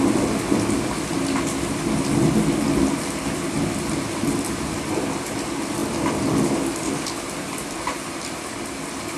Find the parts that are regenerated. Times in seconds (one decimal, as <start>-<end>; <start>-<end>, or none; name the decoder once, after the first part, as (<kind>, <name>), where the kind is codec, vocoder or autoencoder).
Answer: none

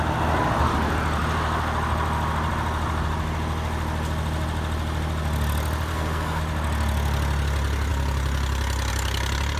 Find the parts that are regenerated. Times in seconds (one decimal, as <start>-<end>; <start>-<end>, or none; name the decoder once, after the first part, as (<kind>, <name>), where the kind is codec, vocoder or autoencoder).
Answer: 5.9-6.4 (codec, SNAC)